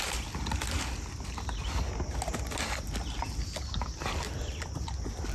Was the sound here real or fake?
real